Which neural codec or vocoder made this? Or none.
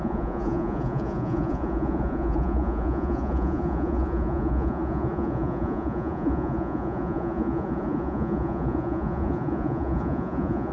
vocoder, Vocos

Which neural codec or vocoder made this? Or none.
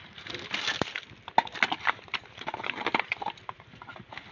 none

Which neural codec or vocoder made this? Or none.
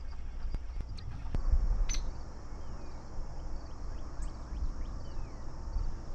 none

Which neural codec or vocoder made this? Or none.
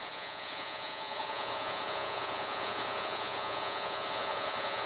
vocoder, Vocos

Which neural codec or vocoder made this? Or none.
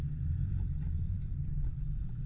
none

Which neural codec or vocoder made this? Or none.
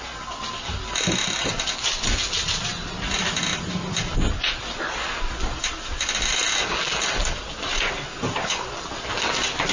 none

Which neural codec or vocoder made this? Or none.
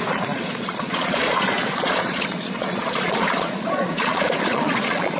vocoder, Vocos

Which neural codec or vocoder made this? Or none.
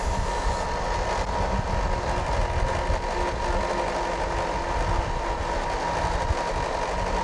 none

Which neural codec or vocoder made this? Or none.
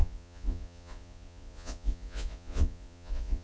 vocoder, Vocos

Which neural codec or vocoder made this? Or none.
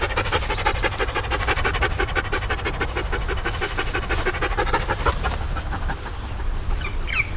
none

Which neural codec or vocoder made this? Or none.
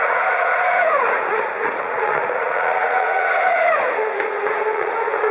vocoder, Vocos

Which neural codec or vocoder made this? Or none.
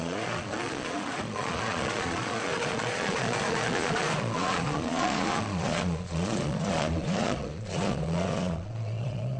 vocoder, Vocos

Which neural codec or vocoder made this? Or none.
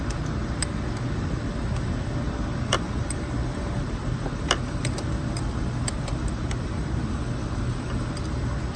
none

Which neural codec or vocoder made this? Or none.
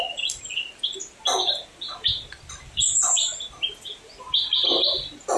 none